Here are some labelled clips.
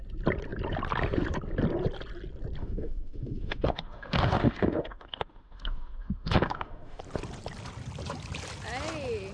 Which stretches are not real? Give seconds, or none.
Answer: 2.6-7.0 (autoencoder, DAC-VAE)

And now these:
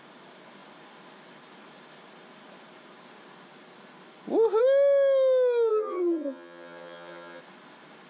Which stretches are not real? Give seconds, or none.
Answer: 5.7-7.4 (vocoder, HiFi-GAN)

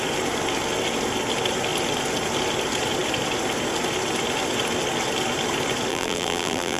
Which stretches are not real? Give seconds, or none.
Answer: 5.9-6.8 (vocoder, BigVGAN v2)

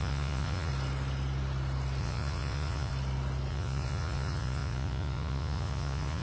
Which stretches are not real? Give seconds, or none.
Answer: 0.0-0.7 (vocoder, Vocos); 2.0-2.9; 3.5-6.2

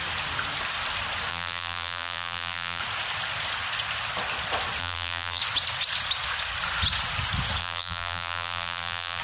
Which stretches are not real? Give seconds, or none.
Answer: 1.3-2.8 (vocoder, BigVGAN v2); 4.8-5.4; 7.6-9.2

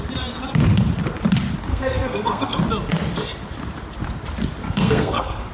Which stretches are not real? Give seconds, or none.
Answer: 1.7-2.6 (codec, SNAC); 4.6-5.5

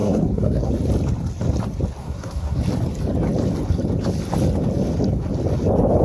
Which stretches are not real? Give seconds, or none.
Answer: 0.0-0.7 (codec, SNAC); 2.0-2.6